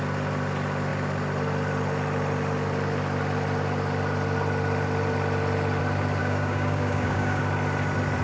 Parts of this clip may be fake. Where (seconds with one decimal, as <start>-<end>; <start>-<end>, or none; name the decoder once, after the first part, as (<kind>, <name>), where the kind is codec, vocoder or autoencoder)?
6.2-7.4 (codec, DAC)

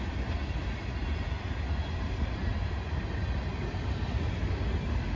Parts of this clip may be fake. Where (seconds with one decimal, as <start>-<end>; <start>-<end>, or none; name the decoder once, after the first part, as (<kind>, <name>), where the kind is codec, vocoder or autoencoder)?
none